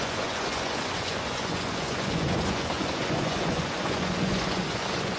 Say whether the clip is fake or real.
fake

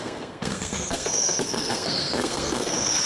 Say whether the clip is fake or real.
fake